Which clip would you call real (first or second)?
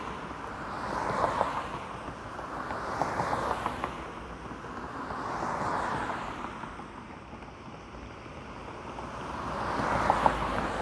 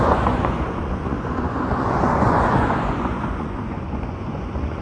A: first